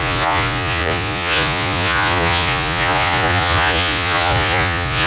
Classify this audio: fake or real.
fake